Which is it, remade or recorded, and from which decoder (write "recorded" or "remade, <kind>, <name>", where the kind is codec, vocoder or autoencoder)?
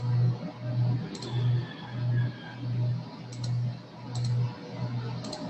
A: recorded